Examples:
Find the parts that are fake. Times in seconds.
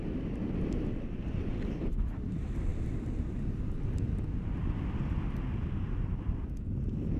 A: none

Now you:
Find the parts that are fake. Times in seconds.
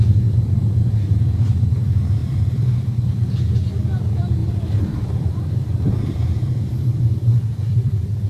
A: 2.2-3.4 (vocoder, BigVGAN v2); 4.4-8.3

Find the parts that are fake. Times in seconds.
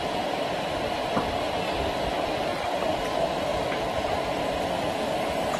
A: 2.5-3.0 (vocoder, BigVGAN v2); 3.5-4.9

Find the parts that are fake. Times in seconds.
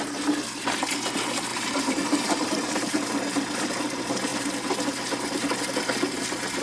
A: 1.5-3.1 (vocoder, BigVGAN v2)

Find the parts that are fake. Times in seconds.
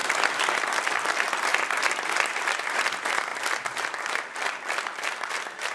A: 0.8-1.5 (vocoder, BigVGAN v2); 2.5-3.3; 5.2-5.7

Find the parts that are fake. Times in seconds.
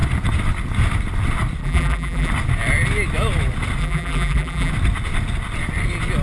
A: 1.6-2.3 (vocoder, BigVGAN v2); 3.8-4.7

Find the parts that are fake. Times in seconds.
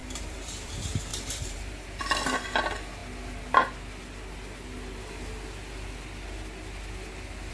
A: 0.0-0.7 (vocoder, BigVGAN v2); 1.1-2.0